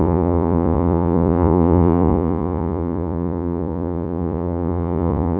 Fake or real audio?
fake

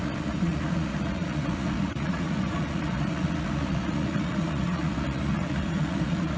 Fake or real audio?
fake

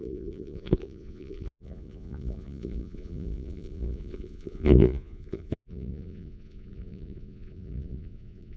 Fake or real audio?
fake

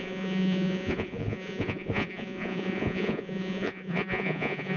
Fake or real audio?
fake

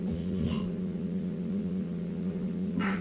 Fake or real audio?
fake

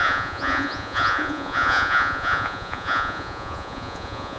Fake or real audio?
fake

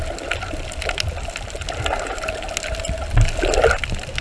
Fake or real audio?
real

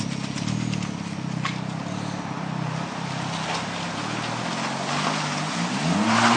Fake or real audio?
real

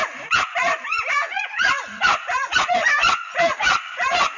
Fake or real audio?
fake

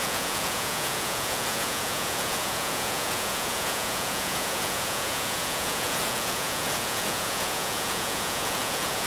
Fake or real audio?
fake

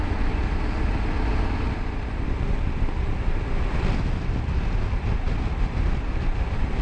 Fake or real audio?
real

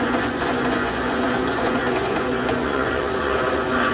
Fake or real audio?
fake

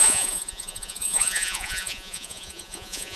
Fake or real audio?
fake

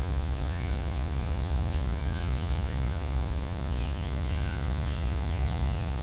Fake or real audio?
fake